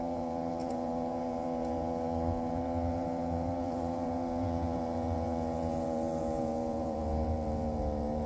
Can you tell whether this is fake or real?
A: fake